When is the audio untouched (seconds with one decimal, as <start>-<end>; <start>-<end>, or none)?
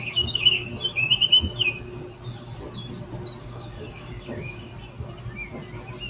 0.7-3.4; 4.7-6.1